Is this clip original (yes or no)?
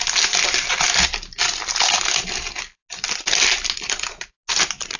yes